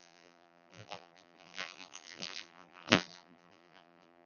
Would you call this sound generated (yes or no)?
yes